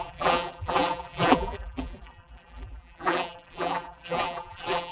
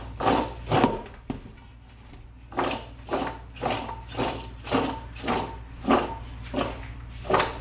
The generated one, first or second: first